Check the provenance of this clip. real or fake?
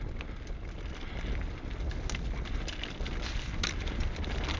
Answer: real